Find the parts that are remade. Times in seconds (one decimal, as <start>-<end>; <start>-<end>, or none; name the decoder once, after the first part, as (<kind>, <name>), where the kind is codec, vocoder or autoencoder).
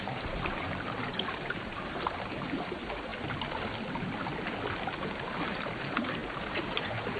0.0-3.1 (vocoder, BigVGAN v2); 5.2-7.2